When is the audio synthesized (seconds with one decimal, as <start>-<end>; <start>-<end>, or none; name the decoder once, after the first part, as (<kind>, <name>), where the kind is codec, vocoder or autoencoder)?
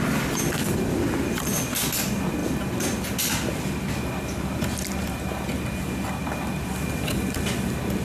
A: none